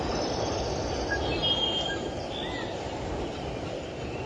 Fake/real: real